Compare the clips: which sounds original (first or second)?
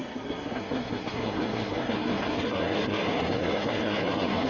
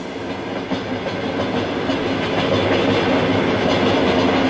second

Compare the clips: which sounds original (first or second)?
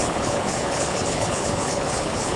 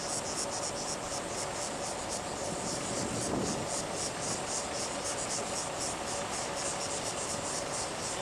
second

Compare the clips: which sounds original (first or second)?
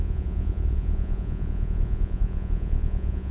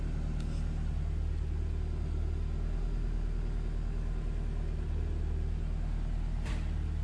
second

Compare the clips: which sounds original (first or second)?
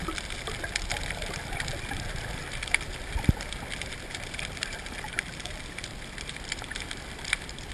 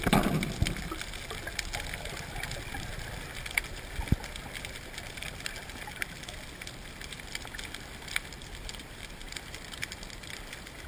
second